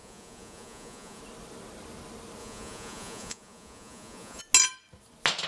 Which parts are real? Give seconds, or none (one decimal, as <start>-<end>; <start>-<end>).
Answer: 1.2-2.4; 4.4-5.5